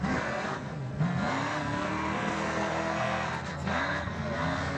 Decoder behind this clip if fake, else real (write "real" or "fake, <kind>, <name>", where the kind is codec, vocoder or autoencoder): fake, codec, SNAC